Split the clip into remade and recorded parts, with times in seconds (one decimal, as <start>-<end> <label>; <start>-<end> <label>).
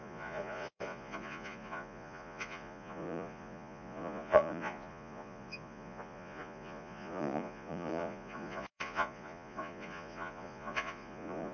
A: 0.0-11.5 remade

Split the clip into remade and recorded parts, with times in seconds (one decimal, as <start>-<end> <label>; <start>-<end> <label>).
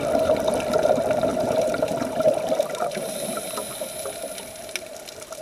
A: 0.0-1.3 recorded; 1.3-3.4 remade; 3.4-5.4 recorded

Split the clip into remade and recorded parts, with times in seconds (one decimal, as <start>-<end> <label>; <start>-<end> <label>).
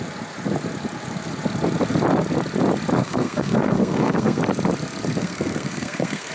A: 0.0-3.0 recorded; 3.0-4.4 remade; 4.4-5.2 recorded; 5.2-6.3 remade